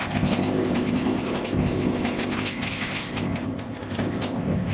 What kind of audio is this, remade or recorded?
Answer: remade